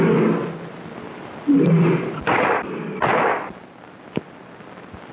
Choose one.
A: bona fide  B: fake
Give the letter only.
A